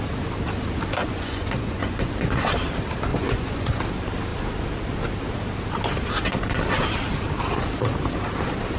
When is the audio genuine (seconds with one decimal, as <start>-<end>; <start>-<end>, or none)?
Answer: 0.0-1.0; 2.1-3.1; 3.8-8.8